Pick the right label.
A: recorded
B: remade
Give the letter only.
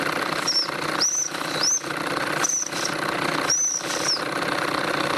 A